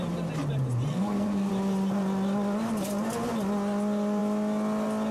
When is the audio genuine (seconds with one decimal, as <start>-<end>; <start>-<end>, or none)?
0.0-0.9; 1.5-5.1